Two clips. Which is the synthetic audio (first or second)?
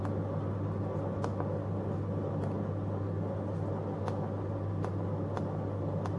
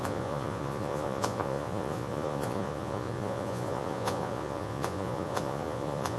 second